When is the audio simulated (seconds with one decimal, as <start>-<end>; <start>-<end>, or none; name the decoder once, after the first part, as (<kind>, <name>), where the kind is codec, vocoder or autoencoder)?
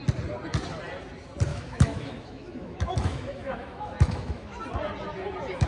1.5-4.6 (autoencoder, DAC-VAE)